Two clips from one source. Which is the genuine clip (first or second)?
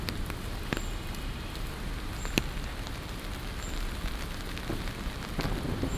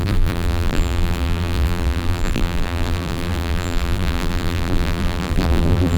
first